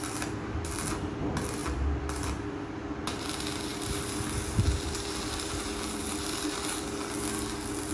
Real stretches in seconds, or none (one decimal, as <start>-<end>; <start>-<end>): 0.0-7.9